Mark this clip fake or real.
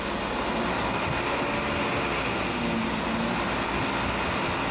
real